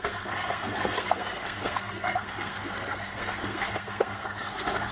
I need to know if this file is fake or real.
fake